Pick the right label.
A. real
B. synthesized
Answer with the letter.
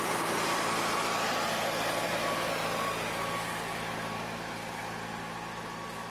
A